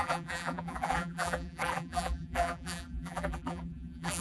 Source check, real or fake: fake